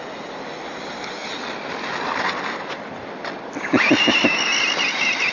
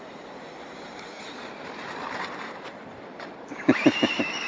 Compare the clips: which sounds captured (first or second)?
first